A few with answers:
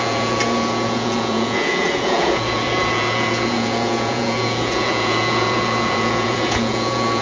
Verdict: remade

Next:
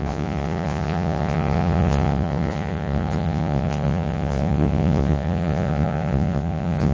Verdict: remade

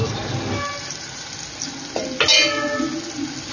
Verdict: recorded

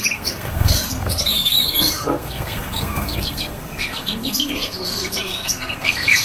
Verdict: remade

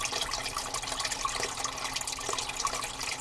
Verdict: recorded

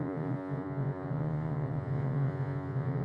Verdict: remade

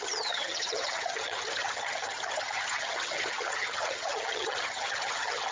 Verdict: remade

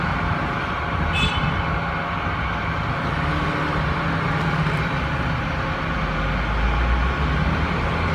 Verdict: recorded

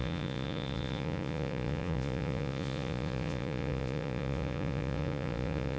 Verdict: remade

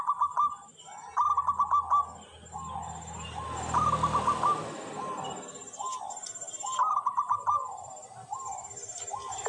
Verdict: recorded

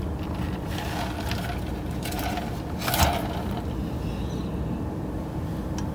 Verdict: recorded